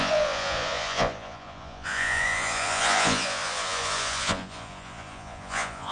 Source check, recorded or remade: remade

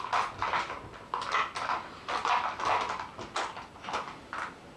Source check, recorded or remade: recorded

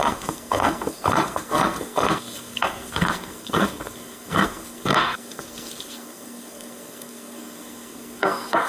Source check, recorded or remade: remade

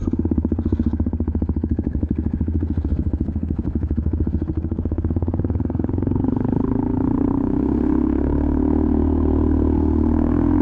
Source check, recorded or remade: remade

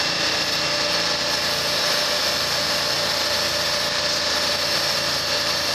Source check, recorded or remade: recorded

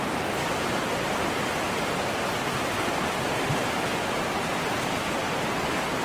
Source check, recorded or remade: recorded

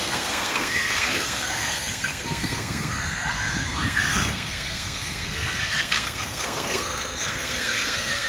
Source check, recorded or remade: remade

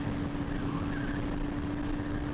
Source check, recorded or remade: recorded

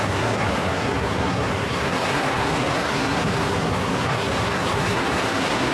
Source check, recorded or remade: remade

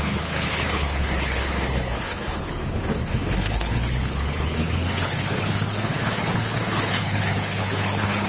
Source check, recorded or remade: remade